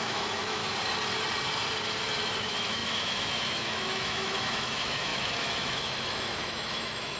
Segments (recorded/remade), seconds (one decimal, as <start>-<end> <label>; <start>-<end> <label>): 0.0-0.6 remade; 0.6-2.4 recorded; 2.4-7.2 remade